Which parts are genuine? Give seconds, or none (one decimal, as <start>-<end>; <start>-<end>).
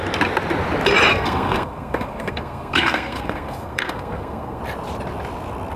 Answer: 0.0-1.1; 4.6-5.8